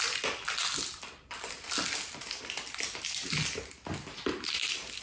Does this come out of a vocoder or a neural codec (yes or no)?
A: no